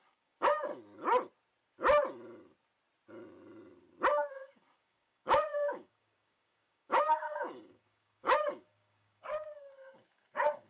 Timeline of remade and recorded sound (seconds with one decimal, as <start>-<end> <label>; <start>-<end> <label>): 0.0-0.7 remade; 0.7-4.3 recorded; 4.3-10.7 remade